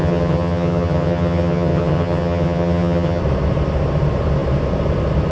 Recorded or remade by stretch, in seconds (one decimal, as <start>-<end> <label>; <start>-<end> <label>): 0.0-3.2 remade; 3.2-5.3 recorded